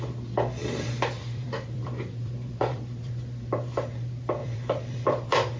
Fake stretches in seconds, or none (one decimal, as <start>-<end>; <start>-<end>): 0.6-3.1; 4.4-5.6